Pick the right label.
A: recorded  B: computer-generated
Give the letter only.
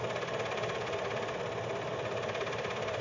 A